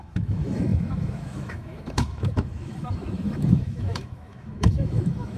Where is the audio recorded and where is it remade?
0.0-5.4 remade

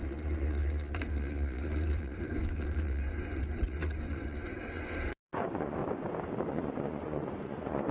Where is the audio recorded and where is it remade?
0.0-5.8 remade; 5.8-6.5 recorded; 6.5-7.9 remade

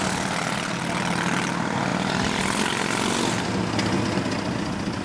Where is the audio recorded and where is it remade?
0.0-5.0 recorded